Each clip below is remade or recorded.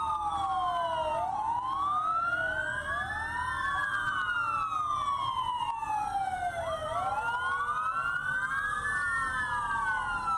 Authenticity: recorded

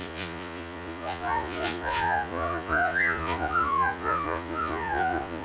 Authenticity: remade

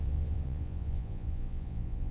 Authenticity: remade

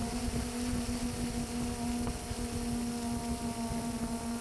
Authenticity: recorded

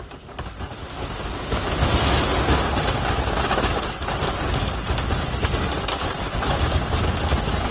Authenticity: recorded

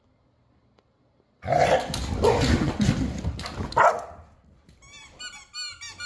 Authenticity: recorded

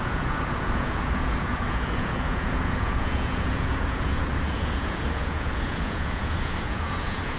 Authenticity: remade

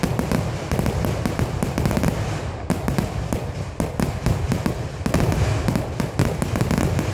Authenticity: recorded